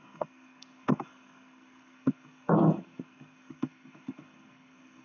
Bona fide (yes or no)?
no